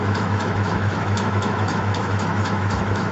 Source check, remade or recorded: remade